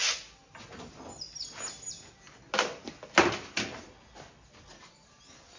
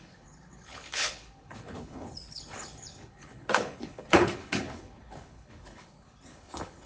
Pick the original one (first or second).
first